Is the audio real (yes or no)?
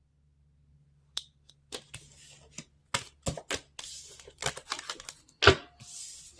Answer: yes